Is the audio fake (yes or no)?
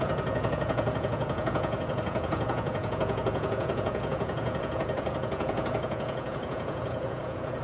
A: yes